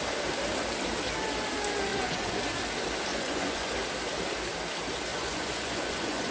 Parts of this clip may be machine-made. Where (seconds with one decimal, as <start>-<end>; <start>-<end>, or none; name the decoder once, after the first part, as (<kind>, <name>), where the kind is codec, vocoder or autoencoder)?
1.9-2.4 (vocoder, Vocos); 3.1-3.7; 5.1-6.3